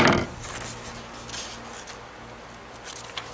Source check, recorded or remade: recorded